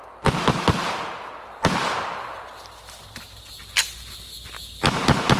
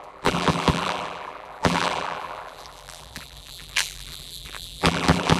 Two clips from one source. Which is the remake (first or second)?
second